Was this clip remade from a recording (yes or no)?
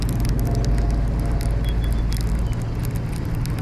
no